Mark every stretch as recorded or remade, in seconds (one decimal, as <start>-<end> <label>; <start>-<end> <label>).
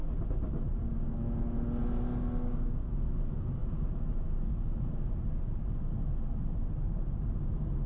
0.0-7.9 recorded